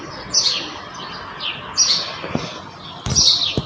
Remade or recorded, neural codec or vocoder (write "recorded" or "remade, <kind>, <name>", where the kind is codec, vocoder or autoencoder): recorded